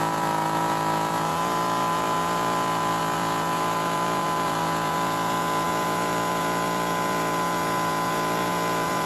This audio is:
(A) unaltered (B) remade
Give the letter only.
B